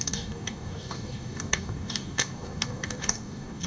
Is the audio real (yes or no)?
no